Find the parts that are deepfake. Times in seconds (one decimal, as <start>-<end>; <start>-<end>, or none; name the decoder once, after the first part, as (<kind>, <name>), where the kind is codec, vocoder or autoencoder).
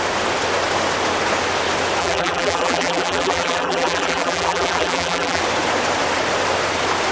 2.0-5.4 (vocoder, BigVGAN v2)